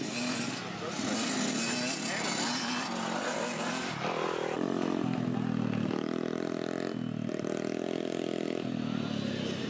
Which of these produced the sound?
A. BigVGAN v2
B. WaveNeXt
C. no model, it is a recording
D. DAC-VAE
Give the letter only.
C